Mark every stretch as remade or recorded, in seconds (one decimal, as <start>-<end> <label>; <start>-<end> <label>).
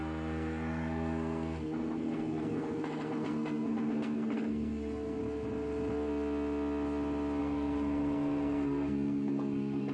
0.0-5.2 remade; 5.2-7.4 recorded; 7.4-9.9 remade